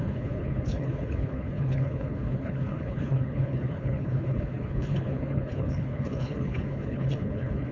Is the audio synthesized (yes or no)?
yes